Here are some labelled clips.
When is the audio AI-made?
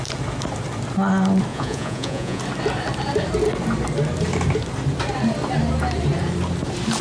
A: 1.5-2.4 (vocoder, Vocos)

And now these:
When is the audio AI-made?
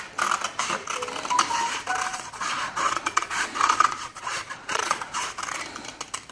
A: 2.1-5.2 (vocoder, Vocos)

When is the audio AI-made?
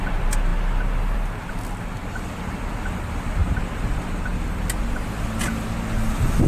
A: none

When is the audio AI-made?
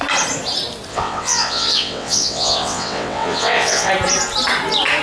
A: 0.9-3.9 (vocoder, WaveNeXt)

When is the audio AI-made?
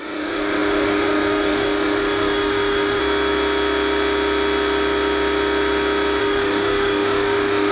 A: 0.0-3.0 (autoencoder, DAC-VAE); 6.2-7.7